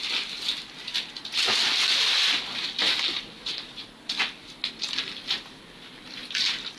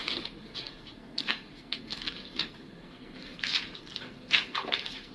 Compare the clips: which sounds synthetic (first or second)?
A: second